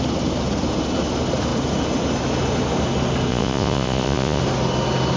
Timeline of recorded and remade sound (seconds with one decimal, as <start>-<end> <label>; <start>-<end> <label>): 0.0-3.3 recorded; 3.3-4.4 remade; 4.4-5.2 recorded